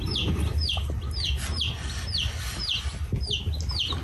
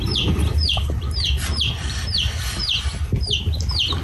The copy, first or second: second